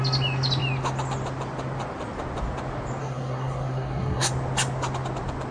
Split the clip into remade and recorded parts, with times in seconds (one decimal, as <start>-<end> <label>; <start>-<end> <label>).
0.0-3.0 recorded; 3.0-4.3 remade; 4.3-5.5 recorded